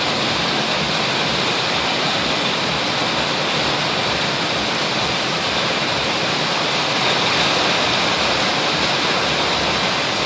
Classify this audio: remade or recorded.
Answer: recorded